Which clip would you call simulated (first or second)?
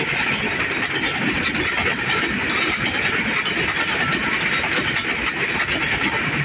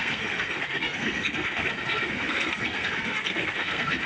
second